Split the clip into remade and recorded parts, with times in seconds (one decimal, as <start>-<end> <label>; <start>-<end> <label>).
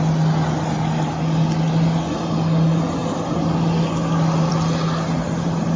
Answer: 0.0-5.8 recorded